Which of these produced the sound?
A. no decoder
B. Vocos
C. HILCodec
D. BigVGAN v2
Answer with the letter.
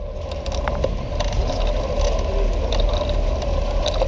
A